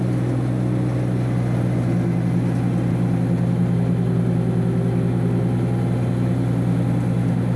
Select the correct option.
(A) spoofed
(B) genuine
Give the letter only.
B